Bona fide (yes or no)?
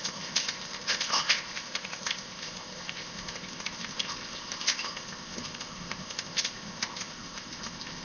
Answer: no